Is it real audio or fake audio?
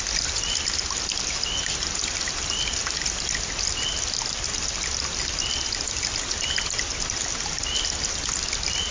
real